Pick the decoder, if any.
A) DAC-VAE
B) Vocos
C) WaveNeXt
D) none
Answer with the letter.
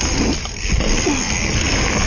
D